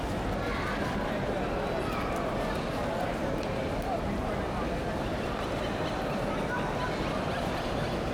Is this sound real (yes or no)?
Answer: yes